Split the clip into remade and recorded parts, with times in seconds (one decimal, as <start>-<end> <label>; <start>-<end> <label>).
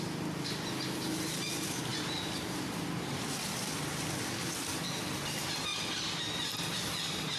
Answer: 0.0-1.9 recorded; 1.9-4.1 remade; 4.1-5.7 recorded; 5.7-7.0 remade; 7.0-7.4 recorded